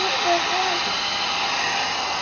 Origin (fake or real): real